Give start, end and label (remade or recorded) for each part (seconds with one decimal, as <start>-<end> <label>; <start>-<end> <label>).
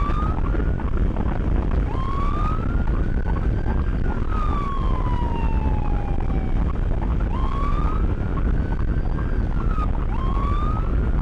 0.0-11.2 recorded